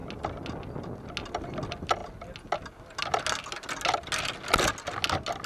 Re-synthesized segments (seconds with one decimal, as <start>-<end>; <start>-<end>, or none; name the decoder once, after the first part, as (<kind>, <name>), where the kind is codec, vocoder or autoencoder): none